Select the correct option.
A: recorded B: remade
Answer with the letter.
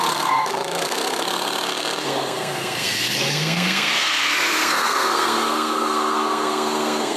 B